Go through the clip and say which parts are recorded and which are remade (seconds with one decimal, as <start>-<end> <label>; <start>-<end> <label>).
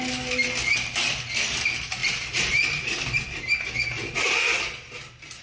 0.0-5.4 recorded